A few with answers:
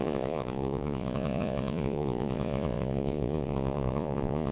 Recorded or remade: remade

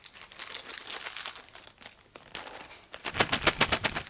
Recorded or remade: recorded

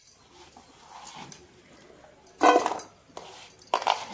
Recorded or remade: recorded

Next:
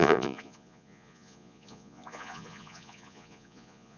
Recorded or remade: remade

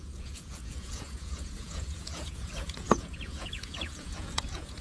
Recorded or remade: remade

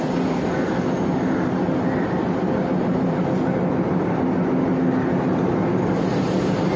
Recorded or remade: recorded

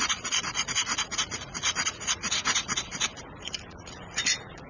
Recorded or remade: remade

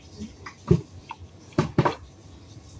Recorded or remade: recorded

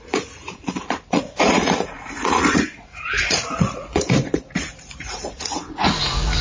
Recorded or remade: remade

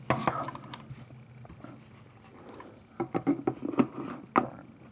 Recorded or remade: recorded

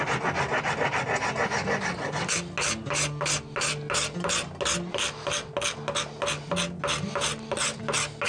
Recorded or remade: recorded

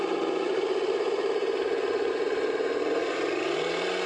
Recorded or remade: recorded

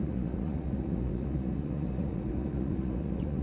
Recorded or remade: remade